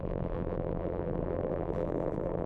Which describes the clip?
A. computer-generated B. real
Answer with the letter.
A